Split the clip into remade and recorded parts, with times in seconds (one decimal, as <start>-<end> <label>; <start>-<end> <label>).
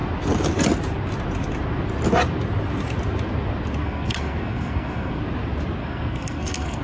0.0-3.8 recorded; 3.8-5.2 remade; 5.2-5.8 recorded; 5.8-6.8 remade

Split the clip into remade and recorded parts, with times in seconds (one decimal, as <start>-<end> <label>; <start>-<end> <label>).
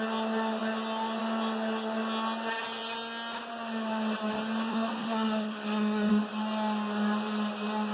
0.0-4.7 recorded; 4.7-6.1 remade; 6.1-7.9 recorded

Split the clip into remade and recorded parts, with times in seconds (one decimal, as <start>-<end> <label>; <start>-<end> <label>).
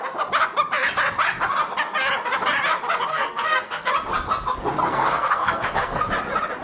0.0-3.1 recorded; 3.1-3.9 remade; 3.9-4.9 recorded; 4.9-6.1 remade; 6.1-6.6 recorded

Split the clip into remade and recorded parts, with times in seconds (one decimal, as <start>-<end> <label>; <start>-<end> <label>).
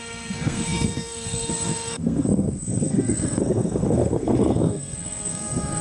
0.0-5.8 remade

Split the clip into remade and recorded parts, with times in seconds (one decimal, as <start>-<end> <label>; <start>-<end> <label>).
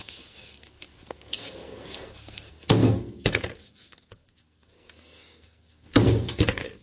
0.0-6.8 remade